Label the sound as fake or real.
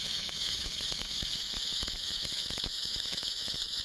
fake